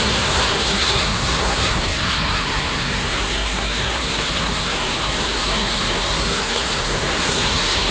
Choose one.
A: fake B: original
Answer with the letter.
A